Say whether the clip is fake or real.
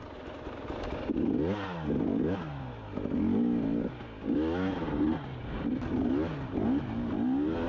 real